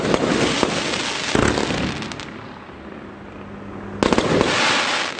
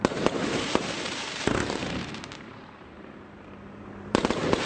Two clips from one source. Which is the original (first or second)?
first